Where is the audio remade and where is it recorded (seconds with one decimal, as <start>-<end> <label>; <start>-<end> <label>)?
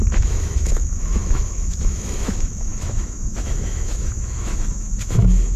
0.0-5.6 remade